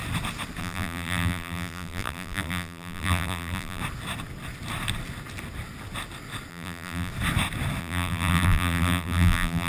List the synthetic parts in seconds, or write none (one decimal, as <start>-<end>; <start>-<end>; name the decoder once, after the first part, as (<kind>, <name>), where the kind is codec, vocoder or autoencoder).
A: 0.6-3.8 (vocoder, BigVGAN v2); 6.5-7.1; 7.8-9.7